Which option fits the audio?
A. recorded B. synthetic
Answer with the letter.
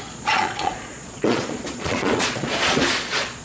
B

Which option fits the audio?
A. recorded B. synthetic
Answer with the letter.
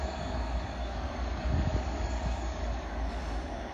B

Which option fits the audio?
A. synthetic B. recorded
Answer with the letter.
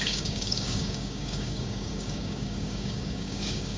A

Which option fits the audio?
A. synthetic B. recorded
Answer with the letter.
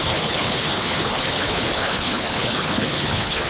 A